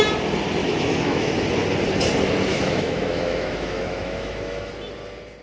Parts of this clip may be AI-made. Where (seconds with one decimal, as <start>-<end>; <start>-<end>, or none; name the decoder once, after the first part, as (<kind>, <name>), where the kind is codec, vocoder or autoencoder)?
0.6-1.3 (autoencoder, DAC-VAE); 2.5-4.7